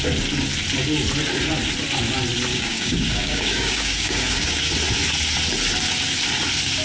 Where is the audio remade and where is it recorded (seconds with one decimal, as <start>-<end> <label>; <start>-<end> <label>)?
0.0-2.5 recorded; 2.5-4.7 remade; 4.7-6.8 recorded